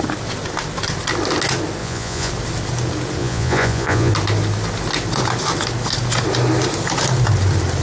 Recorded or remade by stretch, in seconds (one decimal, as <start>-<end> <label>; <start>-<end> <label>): 0.0-1.8 recorded; 1.8-2.3 remade; 2.3-3.2 recorded; 3.2-4.1 remade; 4.1-7.8 recorded